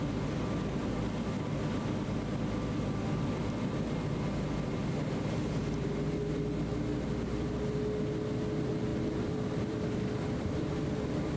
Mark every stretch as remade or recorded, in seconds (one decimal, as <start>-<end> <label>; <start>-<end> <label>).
0.0-5.6 recorded; 5.6-6.6 remade; 6.6-8.9 recorded; 8.9-11.4 remade